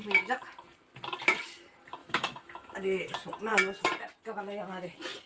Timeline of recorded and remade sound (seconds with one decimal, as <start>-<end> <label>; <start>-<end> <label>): 0.0-2.0 recorded; 2.0-3.1 remade; 3.1-5.3 recorded

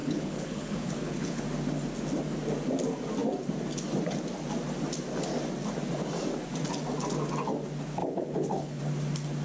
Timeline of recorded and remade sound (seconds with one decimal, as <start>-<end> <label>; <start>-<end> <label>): 0.0-1.4 remade; 1.4-8.0 recorded; 8.0-8.8 remade; 8.8-9.4 recorded